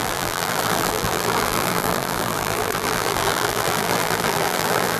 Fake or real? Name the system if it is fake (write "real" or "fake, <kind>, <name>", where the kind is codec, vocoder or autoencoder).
fake, vocoder, BigVGAN v2